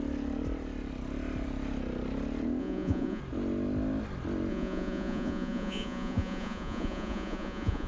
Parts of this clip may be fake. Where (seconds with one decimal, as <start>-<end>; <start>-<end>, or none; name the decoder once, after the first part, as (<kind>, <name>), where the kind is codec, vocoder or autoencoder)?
2.6-3.2 (vocoder, Vocos); 4.5-7.9